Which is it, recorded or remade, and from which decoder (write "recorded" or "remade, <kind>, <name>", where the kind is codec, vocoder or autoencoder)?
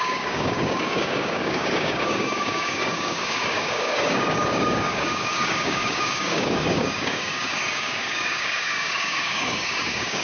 remade, codec, DAC